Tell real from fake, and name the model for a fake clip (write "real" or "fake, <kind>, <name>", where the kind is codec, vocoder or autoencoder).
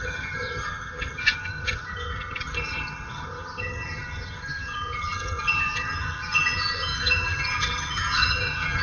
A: fake, vocoder, HiFi-GAN